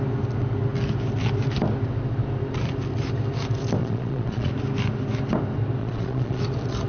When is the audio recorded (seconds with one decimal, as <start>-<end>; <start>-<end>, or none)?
0.0-3.8; 4.5-5.8; 6.4-6.9